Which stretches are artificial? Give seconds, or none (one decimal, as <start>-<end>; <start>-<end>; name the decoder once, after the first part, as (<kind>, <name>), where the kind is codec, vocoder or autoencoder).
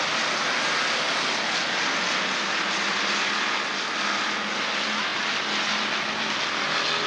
none